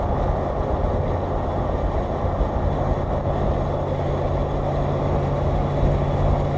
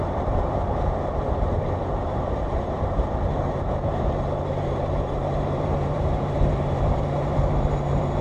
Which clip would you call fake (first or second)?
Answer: second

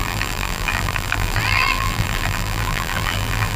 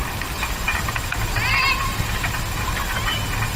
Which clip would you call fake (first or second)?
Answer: first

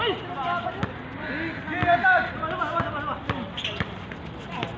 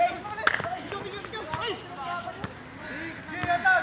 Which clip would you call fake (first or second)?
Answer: first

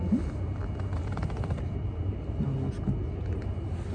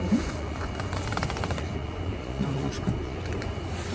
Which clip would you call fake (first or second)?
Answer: second